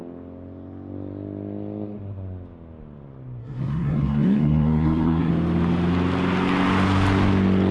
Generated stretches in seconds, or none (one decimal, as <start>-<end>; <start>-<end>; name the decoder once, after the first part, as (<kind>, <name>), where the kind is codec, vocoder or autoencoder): 3.4-5.3 (codec, SNAC)